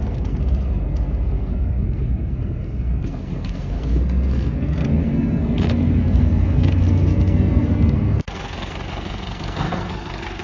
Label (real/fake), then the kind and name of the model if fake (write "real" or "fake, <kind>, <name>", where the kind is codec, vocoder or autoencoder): fake, codec, SNAC